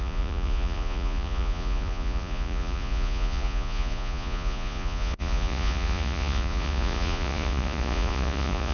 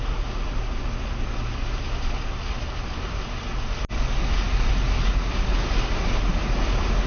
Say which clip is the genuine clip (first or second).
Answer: second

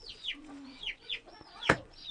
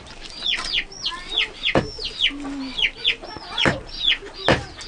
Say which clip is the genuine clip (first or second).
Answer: second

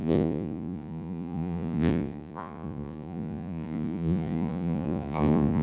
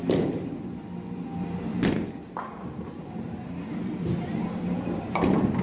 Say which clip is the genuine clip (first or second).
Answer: second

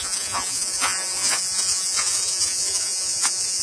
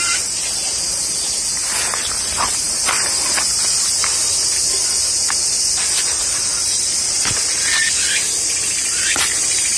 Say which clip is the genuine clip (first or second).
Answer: second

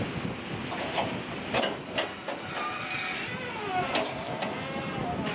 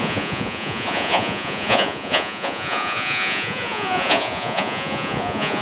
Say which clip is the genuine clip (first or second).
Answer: first